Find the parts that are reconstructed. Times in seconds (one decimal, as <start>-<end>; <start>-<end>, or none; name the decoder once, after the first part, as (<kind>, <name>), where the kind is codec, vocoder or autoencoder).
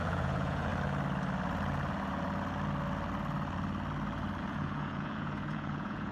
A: 0.0-0.7 (vocoder, Vocos); 4.4-6.1